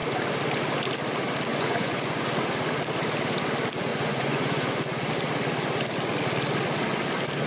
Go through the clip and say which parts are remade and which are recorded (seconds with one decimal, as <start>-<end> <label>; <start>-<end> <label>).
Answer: 0.0-1.5 recorded; 1.5-2.3 remade; 2.3-3.9 recorded; 3.9-5.1 remade; 5.1-7.5 recorded